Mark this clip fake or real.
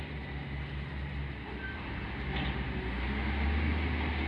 real